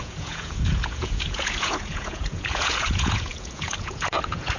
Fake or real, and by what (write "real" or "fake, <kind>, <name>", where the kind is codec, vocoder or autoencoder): fake, vocoder, Vocos